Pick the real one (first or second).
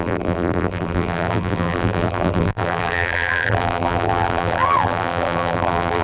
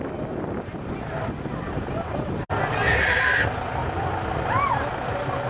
second